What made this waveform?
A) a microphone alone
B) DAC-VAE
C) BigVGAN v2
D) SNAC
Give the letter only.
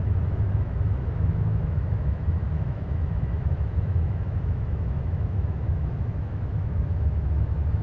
B